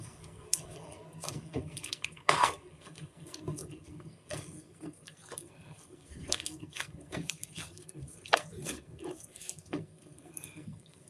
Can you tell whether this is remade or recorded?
remade